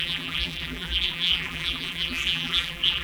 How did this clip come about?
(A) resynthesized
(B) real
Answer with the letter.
A